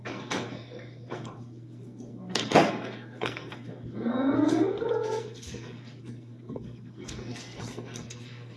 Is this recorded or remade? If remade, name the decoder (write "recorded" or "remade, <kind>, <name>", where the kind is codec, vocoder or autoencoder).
remade, codec, SNAC